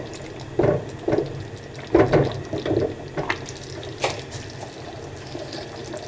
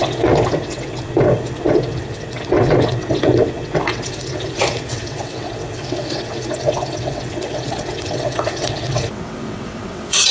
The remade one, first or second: second